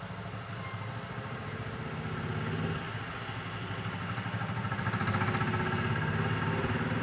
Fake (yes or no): no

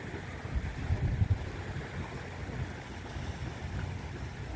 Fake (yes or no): no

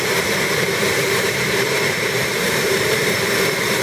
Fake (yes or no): yes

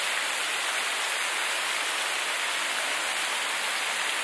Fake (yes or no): no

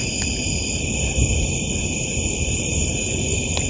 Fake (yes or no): yes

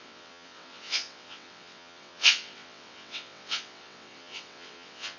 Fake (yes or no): yes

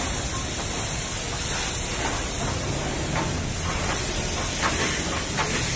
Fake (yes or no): no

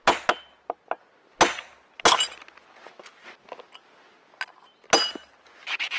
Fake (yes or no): no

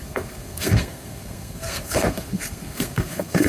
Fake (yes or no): yes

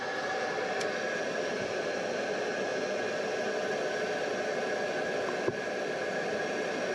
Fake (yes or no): no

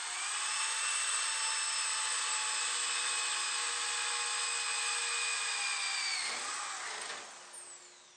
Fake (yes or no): no